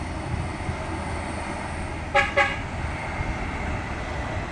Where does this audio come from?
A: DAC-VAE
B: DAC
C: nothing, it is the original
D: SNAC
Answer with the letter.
C